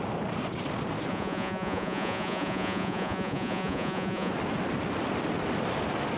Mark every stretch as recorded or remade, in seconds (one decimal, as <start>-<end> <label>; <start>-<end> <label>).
0.0-1.1 recorded; 1.1-4.3 remade; 4.3-6.2 recorded